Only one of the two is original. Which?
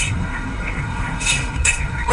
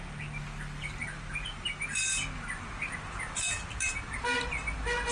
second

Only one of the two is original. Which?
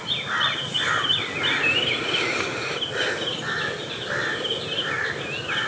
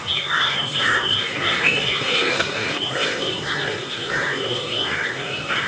first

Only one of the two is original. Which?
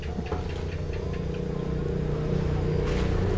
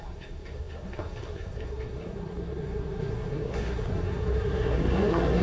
first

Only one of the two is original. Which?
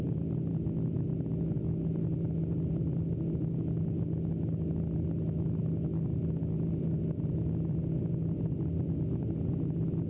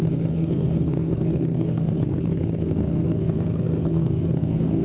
first